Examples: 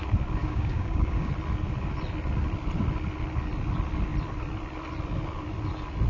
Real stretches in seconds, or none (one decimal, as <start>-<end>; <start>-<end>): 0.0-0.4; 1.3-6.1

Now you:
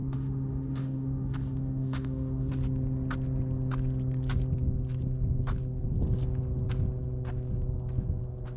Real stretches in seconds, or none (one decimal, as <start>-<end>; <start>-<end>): 2.5-8.6

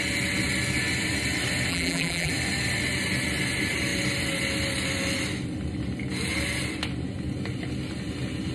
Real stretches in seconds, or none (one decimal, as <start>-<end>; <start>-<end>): 0.0-1.7; 2.3-8.5